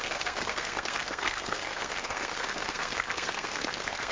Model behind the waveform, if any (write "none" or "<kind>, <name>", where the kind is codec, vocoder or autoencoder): codec, SNAC